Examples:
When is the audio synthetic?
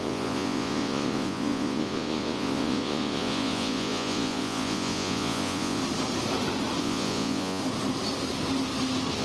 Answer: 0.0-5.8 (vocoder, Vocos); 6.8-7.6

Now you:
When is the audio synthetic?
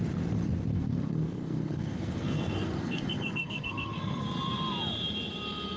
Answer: 0.7-4.2 (codec, SNAC)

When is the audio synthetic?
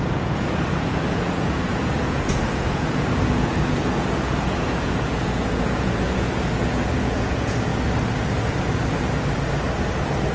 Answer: 0.0-7.7 (vocoder, Vocos)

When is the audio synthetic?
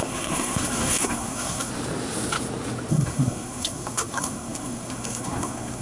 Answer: 0.0-1.7 (codec, SNAC); 2.9-5.8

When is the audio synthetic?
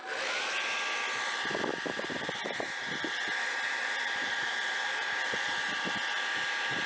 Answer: none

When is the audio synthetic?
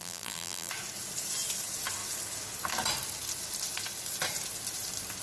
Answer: 0.0-0.7 (vocoder, BigVGAN v2)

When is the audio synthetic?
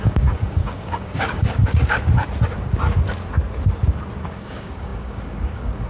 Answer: 0.0-1.6 (codec, DAC); 4.2-5.9